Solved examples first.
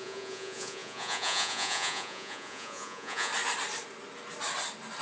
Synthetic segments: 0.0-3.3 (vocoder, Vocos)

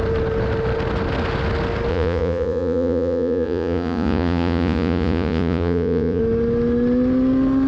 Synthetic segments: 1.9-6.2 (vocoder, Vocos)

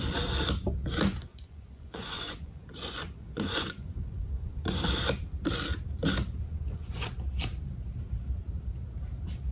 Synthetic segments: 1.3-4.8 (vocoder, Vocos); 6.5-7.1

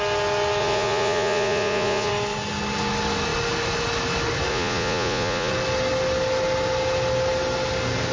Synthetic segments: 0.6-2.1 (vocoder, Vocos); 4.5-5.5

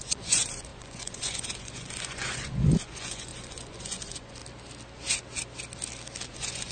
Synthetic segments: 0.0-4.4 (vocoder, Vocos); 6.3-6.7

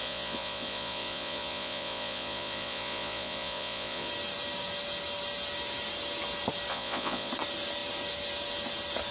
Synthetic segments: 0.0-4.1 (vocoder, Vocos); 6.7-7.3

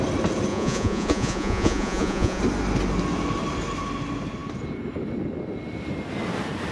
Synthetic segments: 0.5-2.4 (vocoder, Vocos)

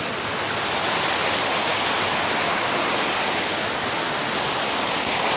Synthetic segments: none